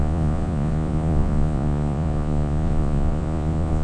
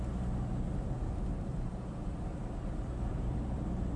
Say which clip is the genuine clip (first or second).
second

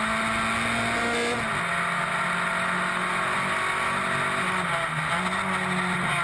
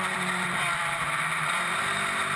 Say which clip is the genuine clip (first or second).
first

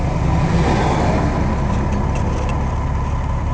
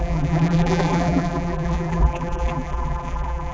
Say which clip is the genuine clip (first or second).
first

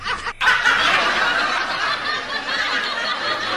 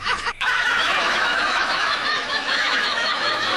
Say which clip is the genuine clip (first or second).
first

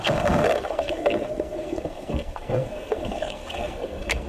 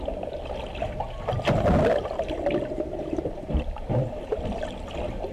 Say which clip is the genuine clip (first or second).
second